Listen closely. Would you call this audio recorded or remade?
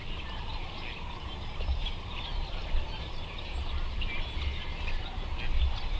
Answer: recorded